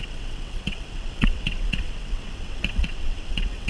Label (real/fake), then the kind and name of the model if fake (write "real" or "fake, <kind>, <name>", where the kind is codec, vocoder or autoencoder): fake, vocoder, WaveNeXt